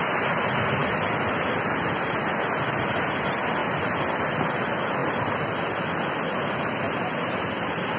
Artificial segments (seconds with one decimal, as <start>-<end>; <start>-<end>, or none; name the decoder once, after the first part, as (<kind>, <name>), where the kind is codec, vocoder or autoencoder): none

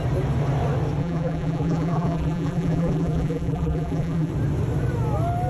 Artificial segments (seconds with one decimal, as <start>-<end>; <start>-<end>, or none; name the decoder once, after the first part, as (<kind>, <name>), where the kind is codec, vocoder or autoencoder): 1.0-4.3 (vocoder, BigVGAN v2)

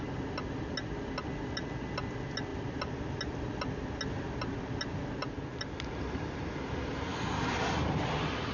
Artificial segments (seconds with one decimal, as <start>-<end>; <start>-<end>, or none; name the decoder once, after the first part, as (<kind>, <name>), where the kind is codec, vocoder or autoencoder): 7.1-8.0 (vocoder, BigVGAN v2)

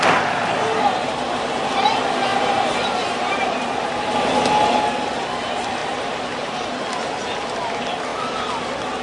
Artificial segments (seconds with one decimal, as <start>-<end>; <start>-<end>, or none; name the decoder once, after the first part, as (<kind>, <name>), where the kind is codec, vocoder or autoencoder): 2.3-4.2 (vocoder, BigVGAN v2); 5.8-6.8

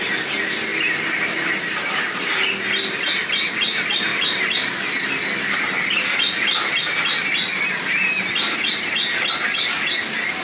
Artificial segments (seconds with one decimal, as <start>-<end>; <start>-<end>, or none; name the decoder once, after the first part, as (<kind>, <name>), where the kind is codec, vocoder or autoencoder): 0.7-1.5 (vocoder, BigVGAN v2); 4.1-4.9

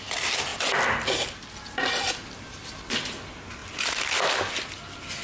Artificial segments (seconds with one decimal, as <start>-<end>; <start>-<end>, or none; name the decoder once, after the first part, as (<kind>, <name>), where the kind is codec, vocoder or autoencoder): 3.6-4.6 (vocoder, BigVGAN v2)